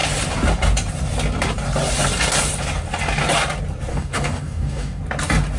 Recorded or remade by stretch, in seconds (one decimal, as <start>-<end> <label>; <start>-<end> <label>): 0.0-3.9 recorded; 3.9-5.0 remade; 5.0-5.6 recorded